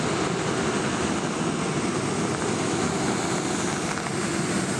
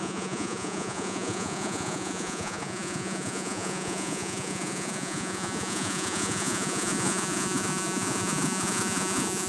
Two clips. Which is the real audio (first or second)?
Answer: first